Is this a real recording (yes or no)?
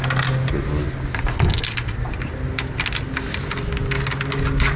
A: yes